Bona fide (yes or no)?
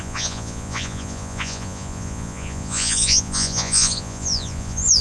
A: no